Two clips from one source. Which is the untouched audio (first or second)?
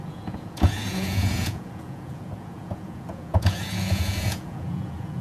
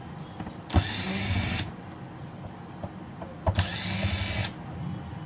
second